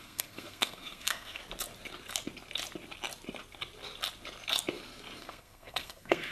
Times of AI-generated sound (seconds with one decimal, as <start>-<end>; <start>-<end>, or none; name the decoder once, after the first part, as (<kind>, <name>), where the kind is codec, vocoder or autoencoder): 0.0-1.4 (codec, SNAC); 5.2-6.3

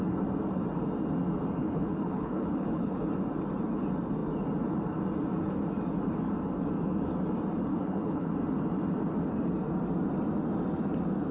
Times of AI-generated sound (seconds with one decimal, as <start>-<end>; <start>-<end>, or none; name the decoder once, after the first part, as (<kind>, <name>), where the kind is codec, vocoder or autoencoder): 1.6-3.1 (codec, HILCodec); 7.7-8.3